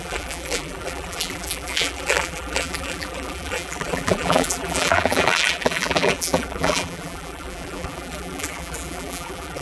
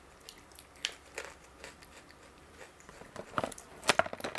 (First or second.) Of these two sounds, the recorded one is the second